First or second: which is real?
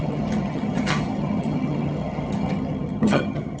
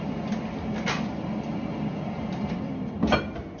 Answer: second